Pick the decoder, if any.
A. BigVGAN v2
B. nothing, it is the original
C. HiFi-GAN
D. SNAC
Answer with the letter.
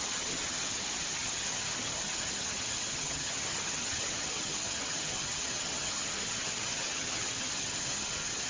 C